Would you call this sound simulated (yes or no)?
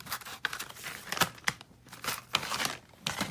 no